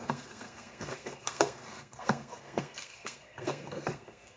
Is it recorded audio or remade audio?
remade